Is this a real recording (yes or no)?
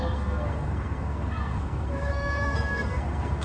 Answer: no